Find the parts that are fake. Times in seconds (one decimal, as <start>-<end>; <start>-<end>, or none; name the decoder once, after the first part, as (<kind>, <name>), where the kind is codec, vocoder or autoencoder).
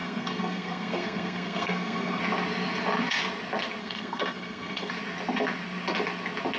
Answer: 0.0-2.2 (codec, SNAC); 3.8-4.9